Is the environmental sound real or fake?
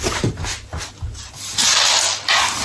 real